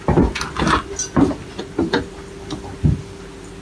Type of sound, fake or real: real